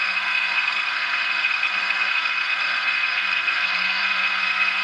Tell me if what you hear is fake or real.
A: fake